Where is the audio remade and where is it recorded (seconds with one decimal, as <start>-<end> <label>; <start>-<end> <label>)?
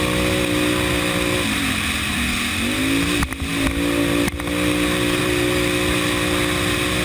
0.0-7.0 recorded